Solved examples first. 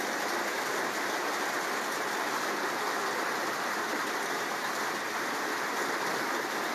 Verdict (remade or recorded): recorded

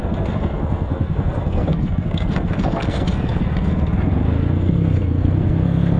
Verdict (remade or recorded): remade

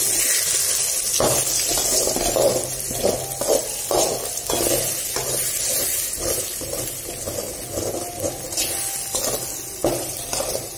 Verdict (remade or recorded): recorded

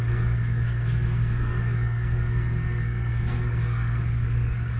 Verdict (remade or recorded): remade